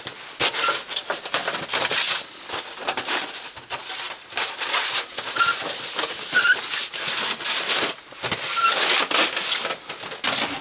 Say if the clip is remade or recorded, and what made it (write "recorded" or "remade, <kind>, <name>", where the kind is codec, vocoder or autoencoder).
recorded